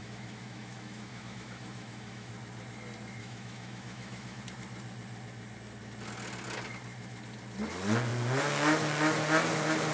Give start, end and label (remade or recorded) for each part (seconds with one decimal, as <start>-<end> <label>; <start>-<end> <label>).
0.0-2.3 remade; 2.3-3.2 recorded; 3.2-4.4 remade; 4.4-9.9 recorded